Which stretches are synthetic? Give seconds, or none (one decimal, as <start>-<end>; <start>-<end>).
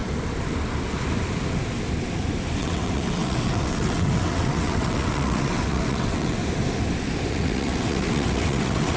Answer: 2.6-6.4; 7.3-9.0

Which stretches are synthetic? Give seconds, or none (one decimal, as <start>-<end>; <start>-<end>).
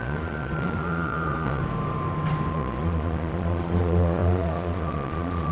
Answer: 0.0-1.6; 2.5-5.5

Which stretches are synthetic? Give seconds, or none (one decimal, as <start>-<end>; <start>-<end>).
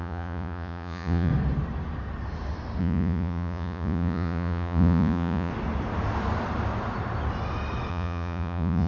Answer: 0.0-1.3; 2.8-5.5; 7.9-8.9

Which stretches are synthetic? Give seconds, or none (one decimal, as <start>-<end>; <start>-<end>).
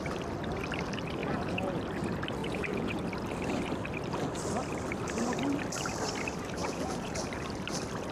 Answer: 1.2-1.8; 2.4-3.0; 6.6-7.2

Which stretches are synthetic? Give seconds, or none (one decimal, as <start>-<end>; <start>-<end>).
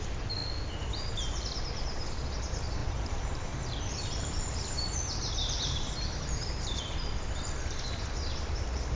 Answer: 2.8-7.1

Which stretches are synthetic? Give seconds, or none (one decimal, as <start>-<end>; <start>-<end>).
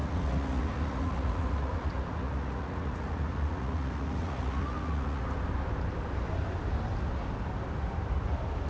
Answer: 0.0-5.2